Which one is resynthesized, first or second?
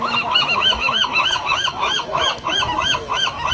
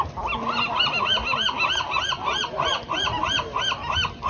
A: first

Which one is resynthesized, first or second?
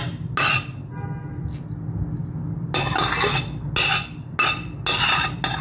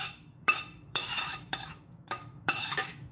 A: second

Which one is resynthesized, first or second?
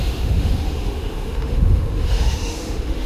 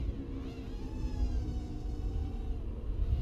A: first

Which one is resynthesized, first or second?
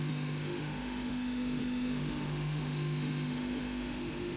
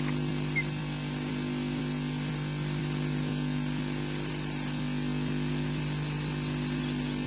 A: first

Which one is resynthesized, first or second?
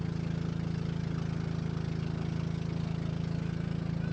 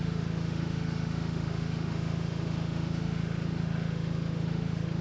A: second